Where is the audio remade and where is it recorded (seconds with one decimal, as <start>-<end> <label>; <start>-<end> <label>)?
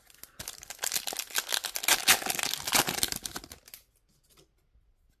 0.0-5.2 recorded